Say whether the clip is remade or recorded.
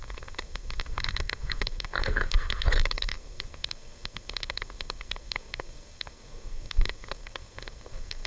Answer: remade